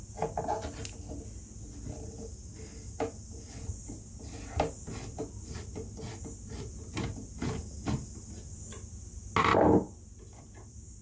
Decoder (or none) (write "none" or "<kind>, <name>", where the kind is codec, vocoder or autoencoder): none